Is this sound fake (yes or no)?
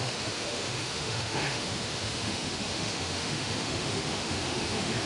yes